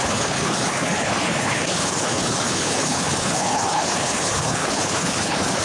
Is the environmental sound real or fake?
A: fake